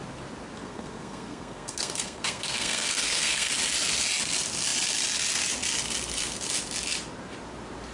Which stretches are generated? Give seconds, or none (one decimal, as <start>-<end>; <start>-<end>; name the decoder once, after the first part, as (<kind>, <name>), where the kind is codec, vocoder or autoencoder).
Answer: 0.6-3.5 (codec, SNAC)